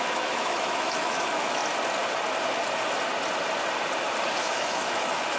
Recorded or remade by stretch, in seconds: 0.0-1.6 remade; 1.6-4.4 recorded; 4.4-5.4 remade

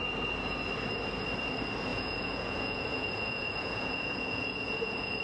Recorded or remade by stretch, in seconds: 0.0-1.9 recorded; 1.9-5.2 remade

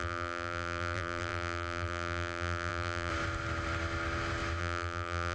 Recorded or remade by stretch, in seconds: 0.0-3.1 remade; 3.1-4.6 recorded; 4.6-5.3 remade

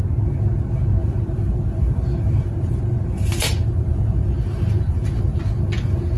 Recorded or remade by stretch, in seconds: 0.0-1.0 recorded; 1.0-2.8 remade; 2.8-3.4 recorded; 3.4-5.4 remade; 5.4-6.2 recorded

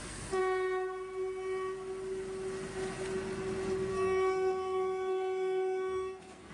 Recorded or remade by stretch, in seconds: 0.0-0.4 remade; 0.4-3.9 recorded; 3.9-6.5 remade

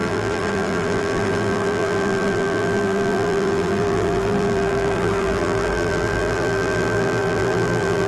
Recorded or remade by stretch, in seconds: 0.0-8.1 remade

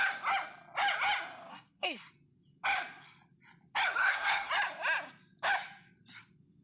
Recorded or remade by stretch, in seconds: 0.0-1.5 recorded; 1.5-2.1 remade; 2.1-4.0 recorded; 4.0-4.5 remade; 4.5-6.6 recorded